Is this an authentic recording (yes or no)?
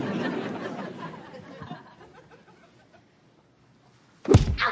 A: yes